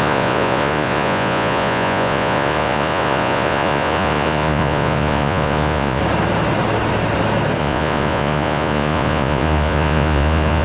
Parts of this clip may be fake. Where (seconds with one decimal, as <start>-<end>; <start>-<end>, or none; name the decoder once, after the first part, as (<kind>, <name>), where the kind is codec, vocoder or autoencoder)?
0.0-6.0 (vocoder, Vocos); 7.6-10.6